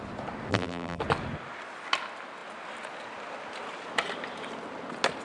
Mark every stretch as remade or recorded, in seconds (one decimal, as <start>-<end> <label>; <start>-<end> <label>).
0.0-0.5 recorded; 0.5-1.0 remade; 1.0-5.2 recorded